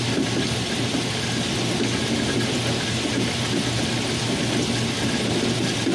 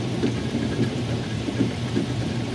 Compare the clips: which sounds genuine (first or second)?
first